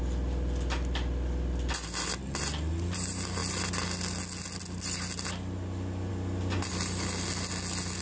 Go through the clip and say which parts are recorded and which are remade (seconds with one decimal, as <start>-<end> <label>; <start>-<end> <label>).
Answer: 0.0-8.0 recorded